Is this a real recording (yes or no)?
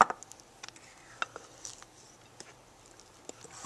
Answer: yes